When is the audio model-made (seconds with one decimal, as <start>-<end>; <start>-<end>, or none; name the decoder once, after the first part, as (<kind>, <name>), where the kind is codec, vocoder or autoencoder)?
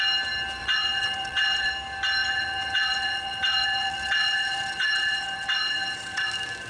0.6-1.7 (vocoder, WaveNeXt); 2.2-6.2